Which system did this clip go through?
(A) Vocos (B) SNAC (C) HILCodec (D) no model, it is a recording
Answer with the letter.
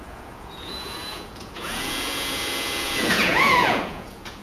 A